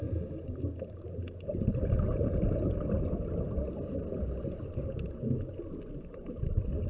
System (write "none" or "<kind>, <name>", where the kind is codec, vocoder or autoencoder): none